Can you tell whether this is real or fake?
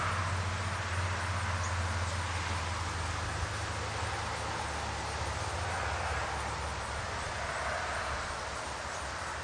real